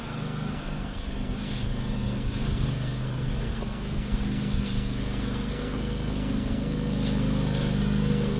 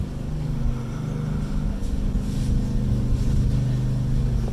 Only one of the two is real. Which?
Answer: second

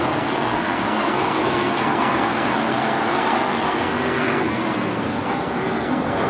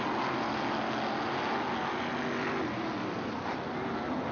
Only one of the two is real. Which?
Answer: second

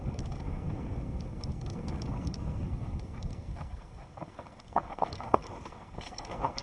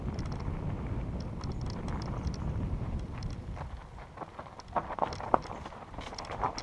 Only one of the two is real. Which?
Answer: second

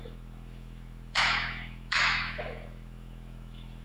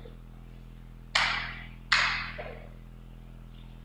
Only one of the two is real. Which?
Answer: second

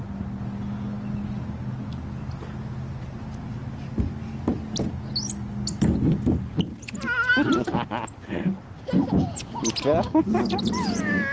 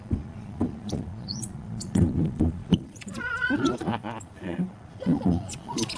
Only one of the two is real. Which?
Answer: first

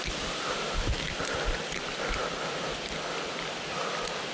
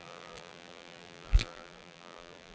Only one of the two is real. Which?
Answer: first